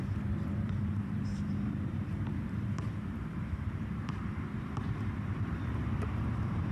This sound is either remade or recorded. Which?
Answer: remade